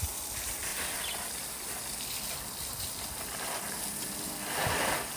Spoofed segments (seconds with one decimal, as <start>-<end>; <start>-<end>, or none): none